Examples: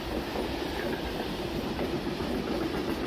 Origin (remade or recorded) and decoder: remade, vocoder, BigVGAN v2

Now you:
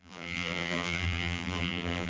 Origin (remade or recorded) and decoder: remade, vocoder, BigVGAN v2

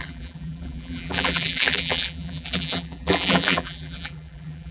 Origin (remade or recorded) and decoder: remade, vocoder, BigVGAN v2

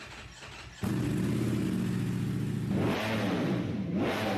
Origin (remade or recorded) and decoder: recorded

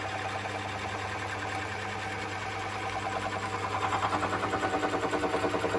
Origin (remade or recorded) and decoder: recorded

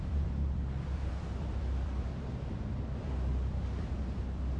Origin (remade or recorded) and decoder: remade, vocoder, BigVGAN v2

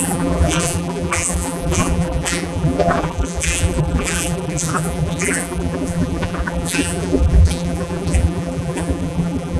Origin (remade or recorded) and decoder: remade, vocoder, BigVGAN v2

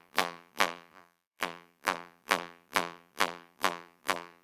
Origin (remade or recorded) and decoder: remade, vocoder, BigVGAN v2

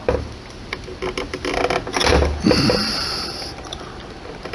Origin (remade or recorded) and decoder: recorded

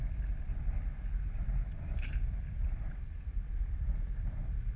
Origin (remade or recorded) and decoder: recorded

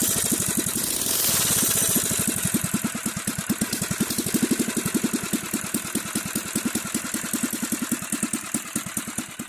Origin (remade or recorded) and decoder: recorded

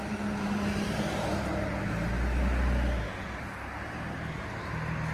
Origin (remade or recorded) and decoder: recorded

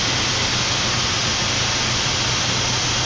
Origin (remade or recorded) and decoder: recorded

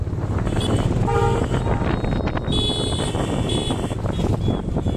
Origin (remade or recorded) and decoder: recorded